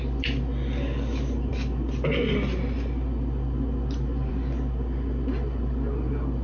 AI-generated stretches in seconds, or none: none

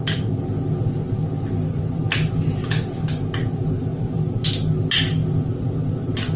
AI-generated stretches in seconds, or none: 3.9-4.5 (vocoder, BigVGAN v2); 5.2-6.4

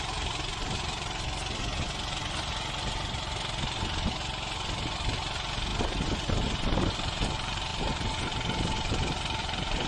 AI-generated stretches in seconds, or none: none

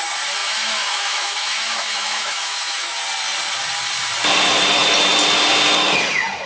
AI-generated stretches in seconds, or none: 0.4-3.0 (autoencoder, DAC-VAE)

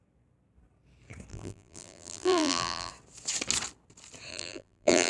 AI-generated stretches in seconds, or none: 1.3-2.9 (vocoder, BigVGAN v2); 4.3-5.1